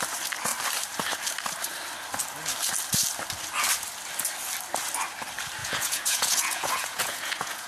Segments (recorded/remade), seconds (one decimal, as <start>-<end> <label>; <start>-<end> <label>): 0.0-5.6 recorded; 5.6-7.7 remade